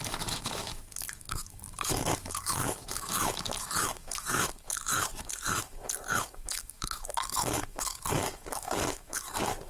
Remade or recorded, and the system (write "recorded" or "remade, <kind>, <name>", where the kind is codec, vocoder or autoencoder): remade, autoencoder, DAC-VAE